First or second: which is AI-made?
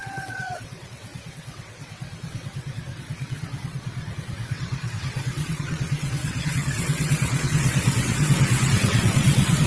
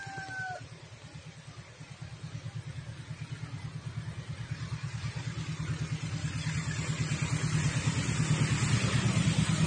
first